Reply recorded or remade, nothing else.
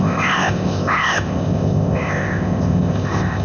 remade